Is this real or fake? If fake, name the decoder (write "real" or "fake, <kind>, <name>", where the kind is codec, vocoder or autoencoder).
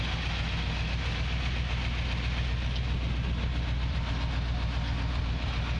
real